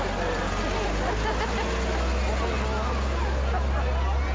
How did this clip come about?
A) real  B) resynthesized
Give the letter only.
A